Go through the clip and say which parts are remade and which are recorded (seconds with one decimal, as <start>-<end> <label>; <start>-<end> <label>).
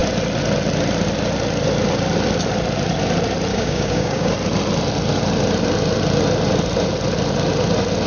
0.0-3.5 recorded; 3.5-4.3 remade; 4.3-8.1 recorded